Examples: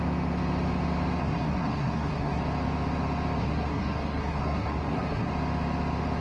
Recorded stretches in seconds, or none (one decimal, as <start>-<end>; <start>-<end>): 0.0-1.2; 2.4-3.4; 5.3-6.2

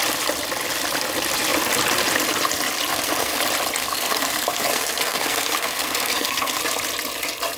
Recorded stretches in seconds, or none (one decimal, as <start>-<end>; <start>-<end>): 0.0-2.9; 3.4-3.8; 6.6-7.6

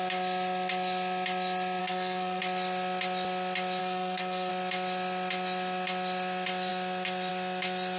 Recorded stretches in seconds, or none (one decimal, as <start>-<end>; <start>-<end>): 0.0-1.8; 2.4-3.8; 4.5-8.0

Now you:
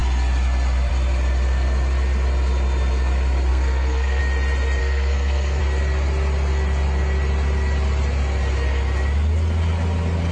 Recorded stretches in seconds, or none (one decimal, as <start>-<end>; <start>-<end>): 0.0-3.5; 4.2-4.8; 5.6-10.3

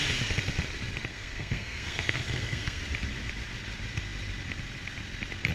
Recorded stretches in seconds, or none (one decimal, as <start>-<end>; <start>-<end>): 0.0-1.1; 2.8-5.5

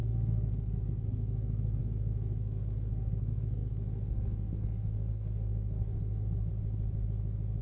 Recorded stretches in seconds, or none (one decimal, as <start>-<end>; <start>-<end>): 6.5-7.6